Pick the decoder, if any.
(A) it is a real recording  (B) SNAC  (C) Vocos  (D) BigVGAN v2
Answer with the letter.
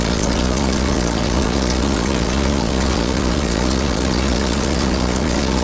C